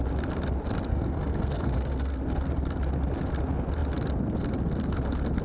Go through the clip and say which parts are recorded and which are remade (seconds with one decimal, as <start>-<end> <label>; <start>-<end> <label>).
0.0-0.9 recorded; 0.9-2.2 remade; 2.2-5.4 recorded